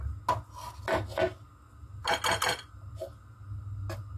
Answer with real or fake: real